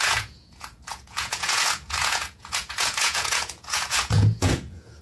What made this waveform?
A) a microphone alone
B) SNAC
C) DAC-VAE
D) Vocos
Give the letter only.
D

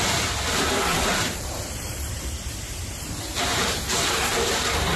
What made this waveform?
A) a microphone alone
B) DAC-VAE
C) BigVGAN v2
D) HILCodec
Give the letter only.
C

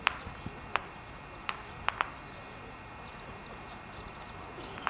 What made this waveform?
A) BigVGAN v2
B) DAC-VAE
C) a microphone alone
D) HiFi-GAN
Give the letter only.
C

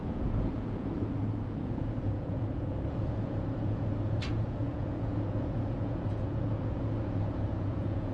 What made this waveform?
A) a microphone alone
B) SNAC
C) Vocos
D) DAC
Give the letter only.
C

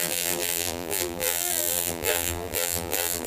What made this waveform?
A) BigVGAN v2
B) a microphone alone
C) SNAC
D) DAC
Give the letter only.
A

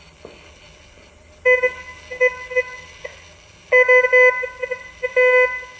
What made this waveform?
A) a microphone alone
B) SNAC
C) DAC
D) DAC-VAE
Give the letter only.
A